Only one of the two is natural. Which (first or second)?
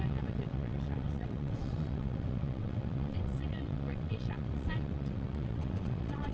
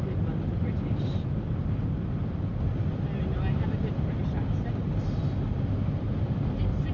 second